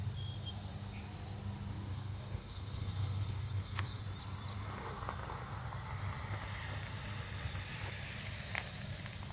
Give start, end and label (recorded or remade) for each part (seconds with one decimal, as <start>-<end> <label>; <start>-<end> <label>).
0.0-1.9 recorded; 1.9-4.0 remade; 4.0-9.3 recorded